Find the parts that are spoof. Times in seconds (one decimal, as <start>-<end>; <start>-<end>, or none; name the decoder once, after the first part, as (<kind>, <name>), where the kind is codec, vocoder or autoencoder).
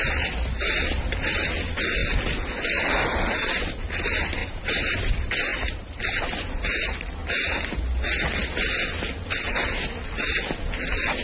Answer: 4.4-5.1 (vocoder, BigVGAN v2); 5.5-6.0; 7.2-7.8